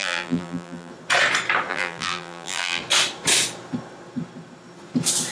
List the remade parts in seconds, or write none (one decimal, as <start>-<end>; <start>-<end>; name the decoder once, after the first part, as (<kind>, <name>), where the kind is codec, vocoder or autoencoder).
0.0-0.9 (vocoder, BigVGAN v2); 1.7-2.8